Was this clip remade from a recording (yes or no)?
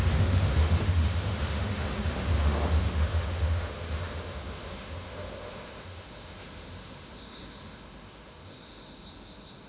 yes